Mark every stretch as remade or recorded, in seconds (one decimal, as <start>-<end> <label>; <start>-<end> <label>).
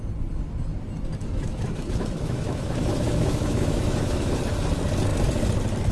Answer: 0.0-1.2 recorded; 1.2-4.4 remade; 4.4-5.9 recorded